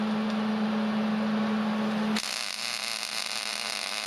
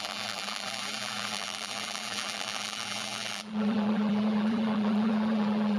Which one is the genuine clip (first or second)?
first